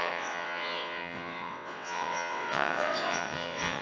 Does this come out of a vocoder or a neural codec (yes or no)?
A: yes